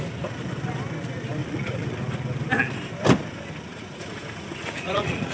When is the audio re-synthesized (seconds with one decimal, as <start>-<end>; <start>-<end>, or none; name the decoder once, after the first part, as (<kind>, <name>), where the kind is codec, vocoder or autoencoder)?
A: 1.4-2.0 (vocoder, Vocos); 3.7-5.3

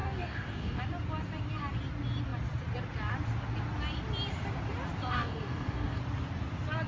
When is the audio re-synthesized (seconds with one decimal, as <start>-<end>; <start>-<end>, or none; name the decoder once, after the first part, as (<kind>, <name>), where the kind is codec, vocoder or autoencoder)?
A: 0.0-0.8 (codec, DAC); 5.1-6.0

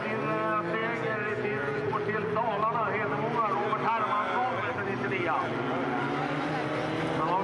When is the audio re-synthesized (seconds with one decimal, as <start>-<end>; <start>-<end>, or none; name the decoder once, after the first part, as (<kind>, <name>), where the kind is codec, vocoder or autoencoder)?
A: 0.8-1.9 (vocoder, Vocos)

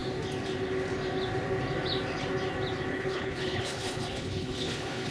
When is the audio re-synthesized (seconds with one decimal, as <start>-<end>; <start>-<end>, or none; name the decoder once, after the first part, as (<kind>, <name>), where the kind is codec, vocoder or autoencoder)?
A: 2.9-5.1 (codec, HILCodec)

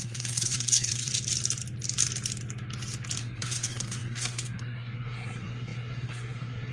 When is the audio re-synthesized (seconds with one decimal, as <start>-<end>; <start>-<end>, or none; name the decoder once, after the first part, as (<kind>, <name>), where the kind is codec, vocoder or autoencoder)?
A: 0.0-1.1 (codec, SNAC); 3.2-6.7

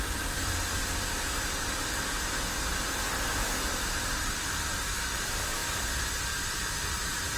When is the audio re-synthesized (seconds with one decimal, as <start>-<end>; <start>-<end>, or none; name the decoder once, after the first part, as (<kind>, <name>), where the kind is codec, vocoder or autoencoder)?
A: 0.0-1.8 (vocoder, BigVGAN v2); 3.3-7.4

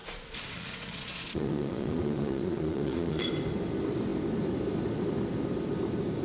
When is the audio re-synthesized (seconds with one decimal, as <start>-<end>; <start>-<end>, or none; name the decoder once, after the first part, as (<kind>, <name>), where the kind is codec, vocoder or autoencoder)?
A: 0.0-3.3 (vocoder, Vocos)

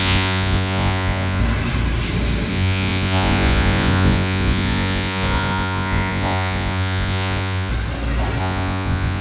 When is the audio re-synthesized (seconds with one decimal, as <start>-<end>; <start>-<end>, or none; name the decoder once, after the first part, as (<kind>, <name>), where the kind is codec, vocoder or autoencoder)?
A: 0.0-1.4 (vocoder, Vocos); 2.5-7.7; 8.4-9.2